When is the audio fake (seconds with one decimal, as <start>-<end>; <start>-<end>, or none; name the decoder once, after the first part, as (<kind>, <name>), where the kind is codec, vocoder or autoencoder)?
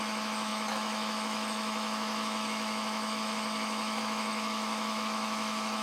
0.0-5.8 (autoencoder, DAC-VAE)